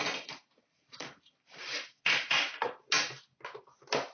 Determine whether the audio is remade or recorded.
recorded